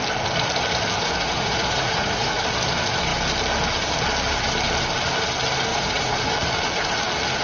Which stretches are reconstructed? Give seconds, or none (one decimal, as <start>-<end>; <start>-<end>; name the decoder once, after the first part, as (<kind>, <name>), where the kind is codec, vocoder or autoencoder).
1.0-2.4 (vocoder, Vocos); 5.7-6.2